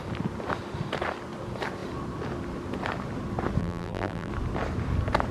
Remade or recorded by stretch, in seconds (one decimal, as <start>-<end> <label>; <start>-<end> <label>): 0.0-3.6 recorded; 3.6-4.3 remade; 4.3-5.3 recorded